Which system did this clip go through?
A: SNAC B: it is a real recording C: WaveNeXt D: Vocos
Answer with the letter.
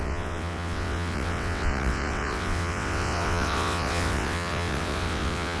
C